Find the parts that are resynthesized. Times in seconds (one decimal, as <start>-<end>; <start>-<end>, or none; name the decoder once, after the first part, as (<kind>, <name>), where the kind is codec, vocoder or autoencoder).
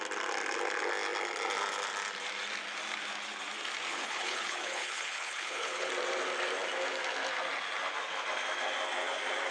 3.9-5.9 (codec, HILCodec)